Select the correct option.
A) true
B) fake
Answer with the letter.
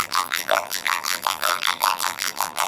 B